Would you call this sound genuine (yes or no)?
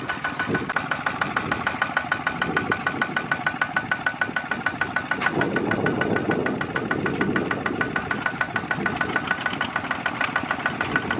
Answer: yes